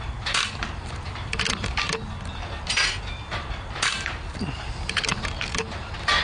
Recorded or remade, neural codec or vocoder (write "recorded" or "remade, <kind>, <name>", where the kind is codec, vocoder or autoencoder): recorded